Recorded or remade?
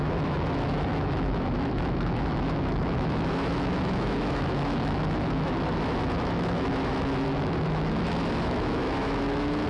remade